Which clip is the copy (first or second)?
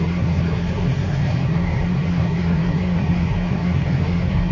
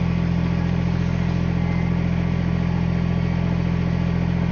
first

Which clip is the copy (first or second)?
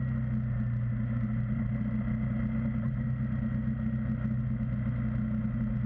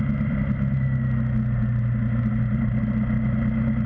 second